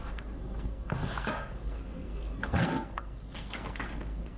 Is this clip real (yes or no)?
no